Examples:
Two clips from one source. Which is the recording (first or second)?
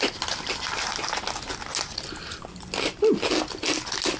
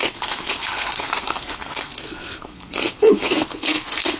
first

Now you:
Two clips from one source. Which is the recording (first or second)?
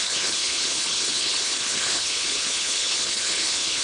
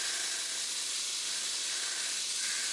second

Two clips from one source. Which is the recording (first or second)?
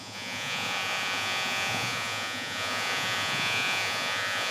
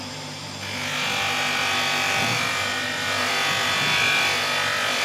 second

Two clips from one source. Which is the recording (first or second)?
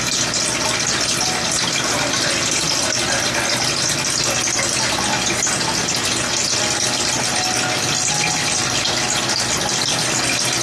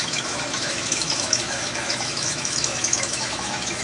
first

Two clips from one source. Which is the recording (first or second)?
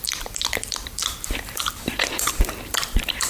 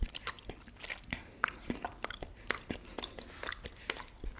second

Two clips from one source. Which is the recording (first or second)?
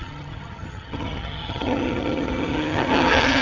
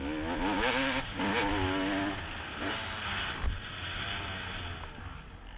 second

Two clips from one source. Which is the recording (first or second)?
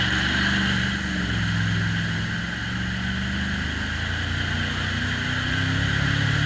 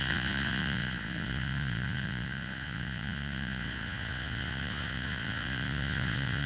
first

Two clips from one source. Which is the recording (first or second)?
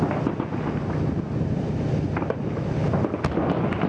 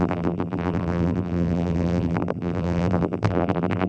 first